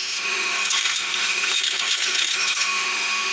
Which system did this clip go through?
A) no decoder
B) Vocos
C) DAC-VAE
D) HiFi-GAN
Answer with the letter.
C